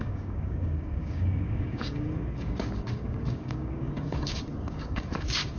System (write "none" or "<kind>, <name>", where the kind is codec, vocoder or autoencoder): codec, DAC